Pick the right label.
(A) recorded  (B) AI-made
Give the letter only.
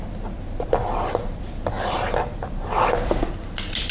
A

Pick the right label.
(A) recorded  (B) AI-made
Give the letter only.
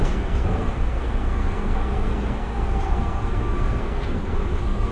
B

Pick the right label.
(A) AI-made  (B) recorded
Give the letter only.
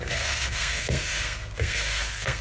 A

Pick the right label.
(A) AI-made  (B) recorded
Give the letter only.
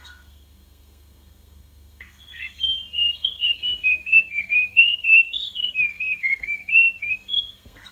A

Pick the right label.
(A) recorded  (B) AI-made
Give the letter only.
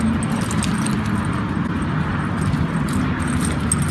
A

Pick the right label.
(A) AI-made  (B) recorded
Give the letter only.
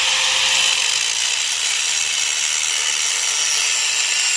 B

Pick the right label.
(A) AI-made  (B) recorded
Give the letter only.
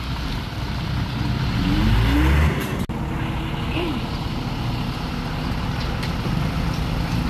B